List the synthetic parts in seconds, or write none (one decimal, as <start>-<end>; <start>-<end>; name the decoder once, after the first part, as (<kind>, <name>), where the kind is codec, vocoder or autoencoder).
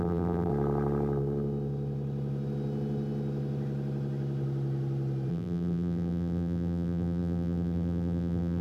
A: 0.0-0.5 (vocoder, BigVGAN v2); 5.3-8.6